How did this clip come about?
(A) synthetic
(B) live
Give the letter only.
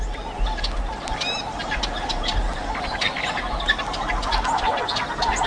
B